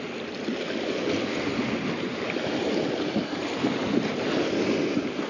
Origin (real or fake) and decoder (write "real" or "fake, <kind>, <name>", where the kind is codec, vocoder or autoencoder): real